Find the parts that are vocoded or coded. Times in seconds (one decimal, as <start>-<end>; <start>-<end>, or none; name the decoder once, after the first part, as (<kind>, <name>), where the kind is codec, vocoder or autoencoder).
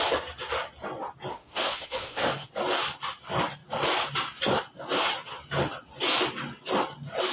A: 1.3-2.5 (autoencoder, DAC-VAE)